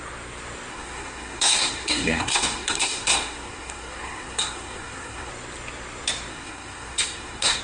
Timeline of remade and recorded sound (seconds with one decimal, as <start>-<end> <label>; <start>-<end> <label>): 0.0-0.7 recorded; 0.7-5.3 remade; 5.3-6.3 recorded; 6.3-7.6 remade